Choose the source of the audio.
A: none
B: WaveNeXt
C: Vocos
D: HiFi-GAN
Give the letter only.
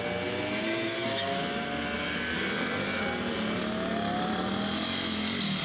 A